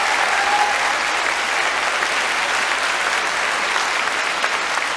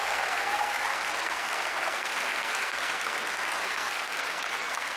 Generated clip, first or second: second